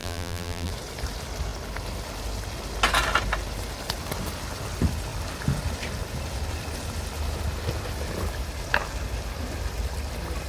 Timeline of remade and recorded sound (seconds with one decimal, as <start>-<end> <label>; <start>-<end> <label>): 0.0-0.7 remade; 0.7-10.5 recorded